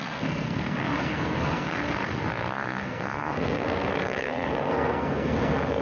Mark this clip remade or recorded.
remade